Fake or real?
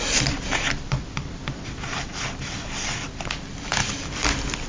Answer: fake